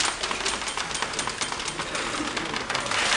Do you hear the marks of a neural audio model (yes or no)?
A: no